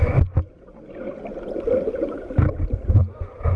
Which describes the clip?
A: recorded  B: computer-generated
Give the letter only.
A